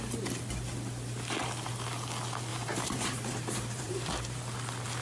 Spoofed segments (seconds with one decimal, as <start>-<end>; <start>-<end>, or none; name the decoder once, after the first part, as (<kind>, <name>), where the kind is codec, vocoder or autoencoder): 2.5-4.4 (vocoder, BigVGAN v2)